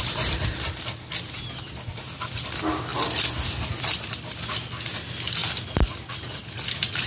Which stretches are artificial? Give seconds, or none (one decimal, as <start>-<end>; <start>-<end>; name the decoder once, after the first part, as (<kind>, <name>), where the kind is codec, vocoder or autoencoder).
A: none